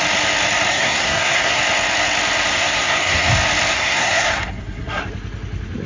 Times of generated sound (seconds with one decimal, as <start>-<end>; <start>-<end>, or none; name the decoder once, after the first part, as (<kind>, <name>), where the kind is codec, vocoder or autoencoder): 0.7-1.6 (codec, SNAC); 2.5-3.3; 3.7-5.0